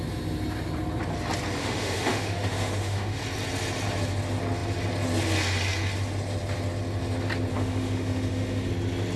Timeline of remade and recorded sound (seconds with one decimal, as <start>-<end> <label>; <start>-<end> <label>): 0.0-1.6 recorded; 1.6-3.2 remade; 3.2-7.5 recorded; 7.5-8.7 remade; 8.7-9.2 recorded